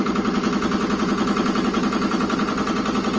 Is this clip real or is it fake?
real